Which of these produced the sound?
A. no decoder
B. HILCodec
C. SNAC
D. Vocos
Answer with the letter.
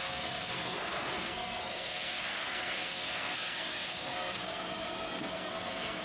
C